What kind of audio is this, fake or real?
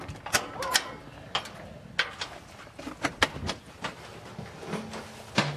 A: real